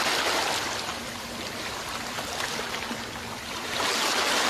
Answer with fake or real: real